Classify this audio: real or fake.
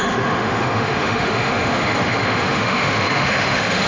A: fake